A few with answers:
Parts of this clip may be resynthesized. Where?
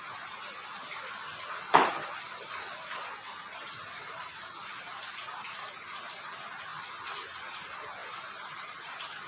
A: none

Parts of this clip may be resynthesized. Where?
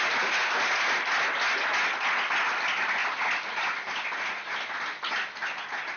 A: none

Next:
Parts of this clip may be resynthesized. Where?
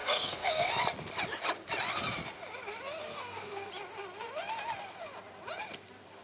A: 0.0-0.7 (codec, SNAC); 3.1-3.7